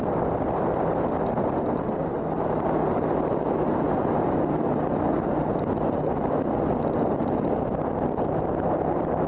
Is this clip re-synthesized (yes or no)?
no